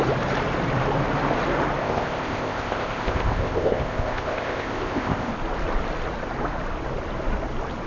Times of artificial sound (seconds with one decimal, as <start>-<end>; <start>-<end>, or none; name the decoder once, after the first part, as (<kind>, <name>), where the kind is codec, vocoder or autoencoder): 1.8-5.3 (codec, ZipCodec)